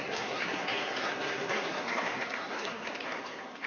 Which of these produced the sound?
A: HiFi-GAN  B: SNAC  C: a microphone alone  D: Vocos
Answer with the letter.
B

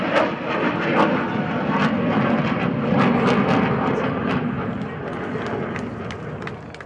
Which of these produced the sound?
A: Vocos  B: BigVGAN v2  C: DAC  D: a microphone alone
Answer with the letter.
D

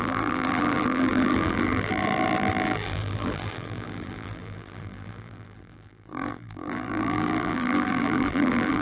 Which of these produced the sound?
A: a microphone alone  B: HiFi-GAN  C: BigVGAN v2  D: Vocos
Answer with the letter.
C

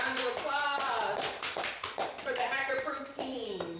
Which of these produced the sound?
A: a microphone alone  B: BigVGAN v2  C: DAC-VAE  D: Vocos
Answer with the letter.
B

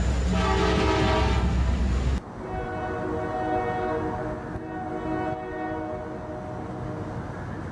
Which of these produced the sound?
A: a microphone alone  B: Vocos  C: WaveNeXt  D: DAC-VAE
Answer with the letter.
A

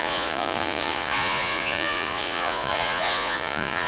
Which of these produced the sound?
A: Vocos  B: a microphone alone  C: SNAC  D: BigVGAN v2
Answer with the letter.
A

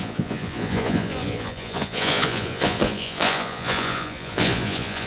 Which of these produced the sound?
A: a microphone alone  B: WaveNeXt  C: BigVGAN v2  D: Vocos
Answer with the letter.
D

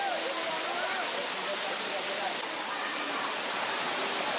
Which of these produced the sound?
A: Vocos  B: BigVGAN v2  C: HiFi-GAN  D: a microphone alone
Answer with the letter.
D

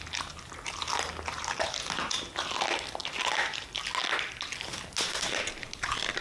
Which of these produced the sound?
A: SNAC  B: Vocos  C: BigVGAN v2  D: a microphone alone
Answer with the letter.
D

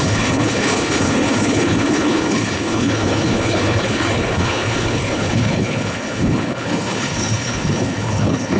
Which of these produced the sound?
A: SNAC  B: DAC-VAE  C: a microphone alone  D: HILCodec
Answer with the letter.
D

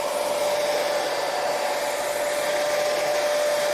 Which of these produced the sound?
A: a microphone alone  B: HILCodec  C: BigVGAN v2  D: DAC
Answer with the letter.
A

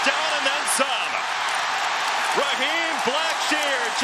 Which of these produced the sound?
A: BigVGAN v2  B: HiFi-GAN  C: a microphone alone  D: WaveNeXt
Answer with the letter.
C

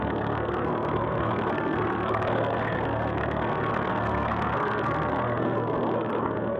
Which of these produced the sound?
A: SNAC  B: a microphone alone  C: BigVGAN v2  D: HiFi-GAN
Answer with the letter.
A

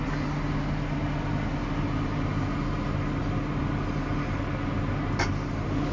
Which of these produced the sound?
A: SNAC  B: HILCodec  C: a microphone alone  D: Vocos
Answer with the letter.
C